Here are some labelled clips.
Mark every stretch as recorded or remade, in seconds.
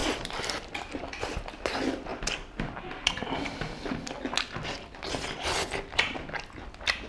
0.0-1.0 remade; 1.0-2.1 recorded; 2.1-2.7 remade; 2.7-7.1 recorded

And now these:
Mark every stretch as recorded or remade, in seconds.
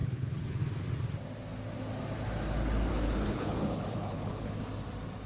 0.0-0.6 remade; 0.6-2.9 recorded; 2.9-4.6 remade; 4.6-5.3 recorded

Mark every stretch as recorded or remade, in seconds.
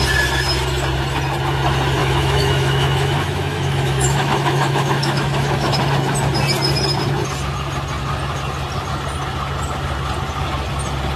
0.0-2.0 recorded; 2.0-5.8 remade; 5.8-11.2 recorded